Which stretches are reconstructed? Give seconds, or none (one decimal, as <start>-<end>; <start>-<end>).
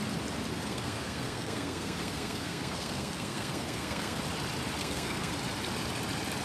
0.5-4.2; 4.8-5.3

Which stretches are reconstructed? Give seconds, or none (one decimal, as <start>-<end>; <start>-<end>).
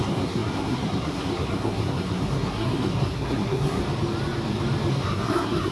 0.0-3.8; 4.9-5.7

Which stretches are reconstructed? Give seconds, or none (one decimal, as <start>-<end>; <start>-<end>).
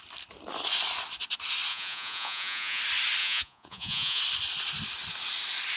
1.7-2.8; 3.2-4.2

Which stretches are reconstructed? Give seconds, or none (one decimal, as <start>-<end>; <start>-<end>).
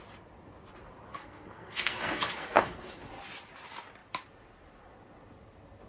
1.1-3.1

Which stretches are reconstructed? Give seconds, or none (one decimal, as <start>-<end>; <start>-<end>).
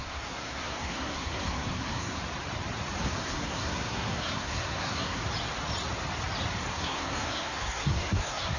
0.0-2.2; 3.0-5.2; 6.7-8.6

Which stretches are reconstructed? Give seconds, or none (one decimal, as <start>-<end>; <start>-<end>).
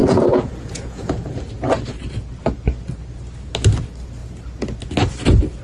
0.0-1.3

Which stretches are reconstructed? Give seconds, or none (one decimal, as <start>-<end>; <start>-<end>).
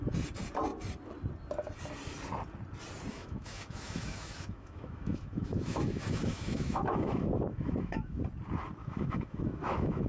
3.1-8.2; 8.8-10.1